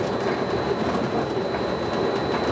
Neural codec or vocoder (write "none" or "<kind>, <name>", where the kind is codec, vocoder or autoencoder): none